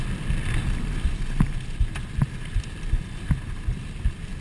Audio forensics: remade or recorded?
recorded